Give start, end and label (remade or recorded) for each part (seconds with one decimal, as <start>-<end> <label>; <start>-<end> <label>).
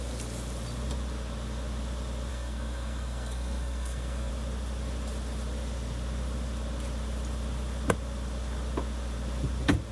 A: 0.0-2.3 recorded; 2.3-4.3 remade; 4.3-9.9 recorded